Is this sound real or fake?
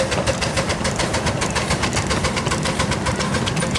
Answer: real